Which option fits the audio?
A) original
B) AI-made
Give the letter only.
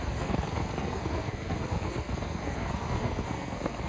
B